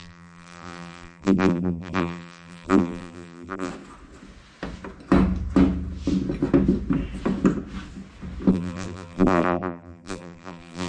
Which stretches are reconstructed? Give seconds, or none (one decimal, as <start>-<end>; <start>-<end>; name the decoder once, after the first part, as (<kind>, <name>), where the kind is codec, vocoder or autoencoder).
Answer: 0.0-3.7 (vocoder, BigVGAN v2); 8.5-10.9